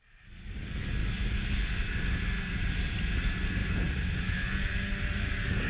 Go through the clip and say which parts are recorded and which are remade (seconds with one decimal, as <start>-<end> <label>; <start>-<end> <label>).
0.0-5.7 recorded

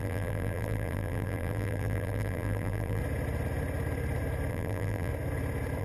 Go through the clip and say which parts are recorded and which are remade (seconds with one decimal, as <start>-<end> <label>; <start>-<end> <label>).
0.0-3.0 remade; 3.0-4.5 recorded; 4.5-5.1 remade; 5.1-5.8 recorded